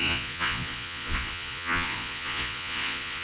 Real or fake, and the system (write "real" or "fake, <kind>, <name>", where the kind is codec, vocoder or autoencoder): fake, vocoder, Vocos